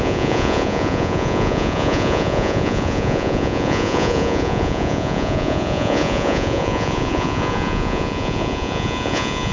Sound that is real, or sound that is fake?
fake